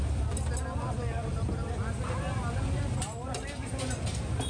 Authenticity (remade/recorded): recorded